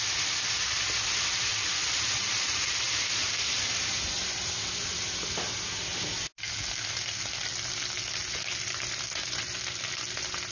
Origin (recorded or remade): recorded